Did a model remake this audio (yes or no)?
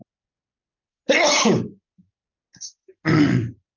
no